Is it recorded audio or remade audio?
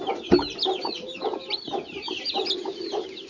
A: remade